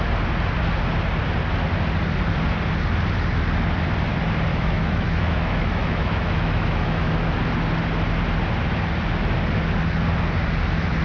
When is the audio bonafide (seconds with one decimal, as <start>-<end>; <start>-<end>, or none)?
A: 0.0-4.5; 7.1-11.0